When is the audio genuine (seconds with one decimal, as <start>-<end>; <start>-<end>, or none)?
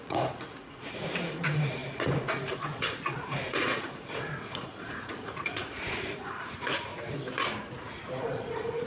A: 6.9-8.2